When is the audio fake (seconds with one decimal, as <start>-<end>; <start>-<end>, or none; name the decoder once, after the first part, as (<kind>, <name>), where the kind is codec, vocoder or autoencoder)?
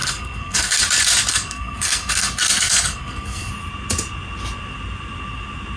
0.0-0.8 (codec, SNAC); 1.3-3.5